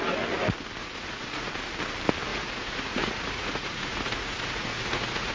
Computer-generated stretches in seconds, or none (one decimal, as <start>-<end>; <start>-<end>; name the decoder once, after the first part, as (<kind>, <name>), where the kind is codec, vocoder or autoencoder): 0.8-1.5 (vocoder, Vocos); 2.3-5.3